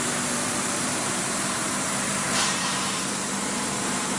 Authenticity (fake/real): fake